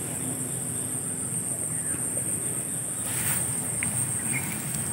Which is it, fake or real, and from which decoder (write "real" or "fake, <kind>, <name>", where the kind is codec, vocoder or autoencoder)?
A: real